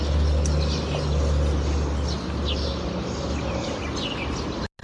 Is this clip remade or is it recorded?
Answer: recorded